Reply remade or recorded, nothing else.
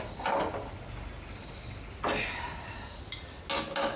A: recorded